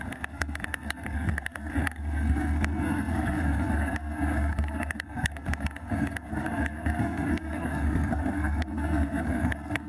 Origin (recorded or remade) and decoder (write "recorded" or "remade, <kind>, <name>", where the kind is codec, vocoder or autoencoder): remade, codec, SNAC